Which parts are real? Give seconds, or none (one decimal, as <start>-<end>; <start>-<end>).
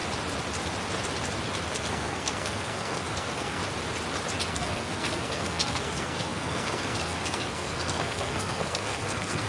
0.0-1.7; 3.6-4.5